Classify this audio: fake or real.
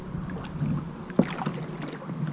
real